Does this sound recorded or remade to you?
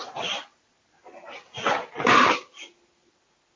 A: recorded